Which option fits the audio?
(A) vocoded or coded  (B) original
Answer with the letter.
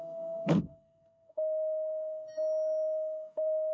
A